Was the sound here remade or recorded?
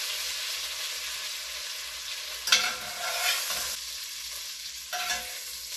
recorded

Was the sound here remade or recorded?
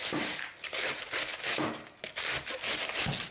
recorded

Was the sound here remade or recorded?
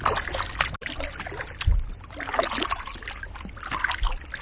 recorded